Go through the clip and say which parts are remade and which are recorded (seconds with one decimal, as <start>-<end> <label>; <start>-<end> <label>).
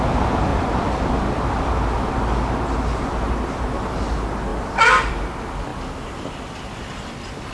0.0-7.5 recorded